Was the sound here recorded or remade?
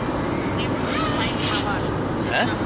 recorded